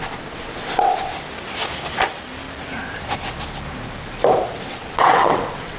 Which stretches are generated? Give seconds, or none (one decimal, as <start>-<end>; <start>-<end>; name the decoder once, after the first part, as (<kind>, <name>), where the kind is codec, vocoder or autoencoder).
0.0-1.1 (vocoder, WaveNeXt); 4.6-5.8